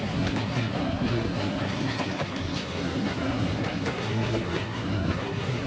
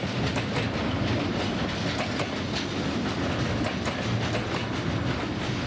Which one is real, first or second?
second